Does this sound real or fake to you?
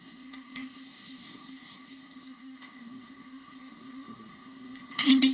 fake